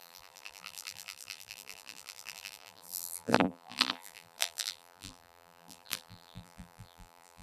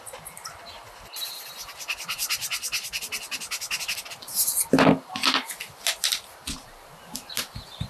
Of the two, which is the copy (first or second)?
first